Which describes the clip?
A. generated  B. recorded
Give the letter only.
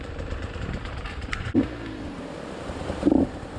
A